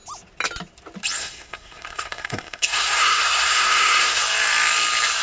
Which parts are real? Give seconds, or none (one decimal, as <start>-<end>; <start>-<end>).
0.0-1.2; 4.2-5.2